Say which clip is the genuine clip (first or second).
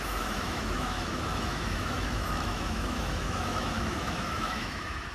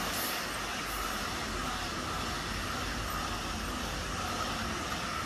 second